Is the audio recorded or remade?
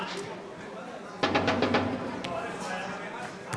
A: recorded